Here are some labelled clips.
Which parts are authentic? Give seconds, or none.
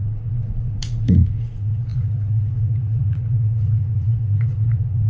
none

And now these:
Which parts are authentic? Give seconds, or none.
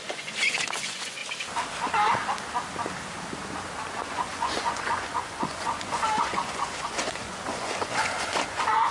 1.2-3.9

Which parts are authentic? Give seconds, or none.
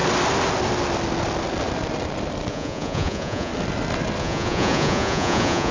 0.0-2.5; 3.5-4.2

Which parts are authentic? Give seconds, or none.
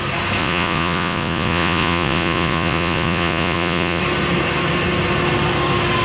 0.0-0.4; 4.0-6.0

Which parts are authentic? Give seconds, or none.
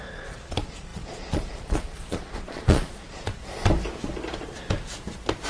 3.4-5.5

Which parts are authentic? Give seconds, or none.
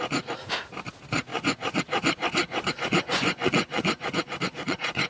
0.0-1.3; 1.8-2.4